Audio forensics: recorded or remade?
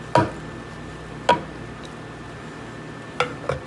recorded